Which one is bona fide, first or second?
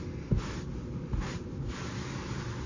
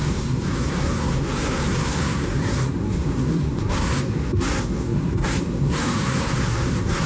first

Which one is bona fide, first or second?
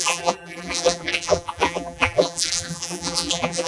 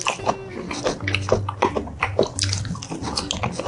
second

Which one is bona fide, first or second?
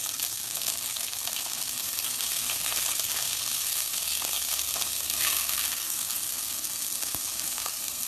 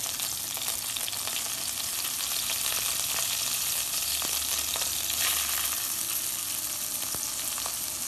second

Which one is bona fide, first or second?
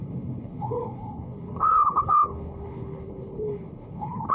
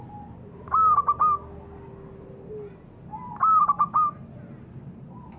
second